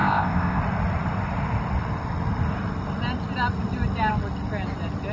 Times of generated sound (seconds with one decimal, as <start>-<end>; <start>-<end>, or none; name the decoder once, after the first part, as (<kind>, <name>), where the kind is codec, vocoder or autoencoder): 0.0-0.6 (codec, ZipCodec)

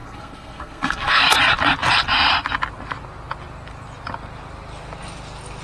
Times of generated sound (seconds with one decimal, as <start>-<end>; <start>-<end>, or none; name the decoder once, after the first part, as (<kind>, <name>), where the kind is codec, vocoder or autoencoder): 0.0-1.2 (codec, SNAC)